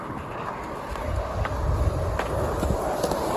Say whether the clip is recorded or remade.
recorded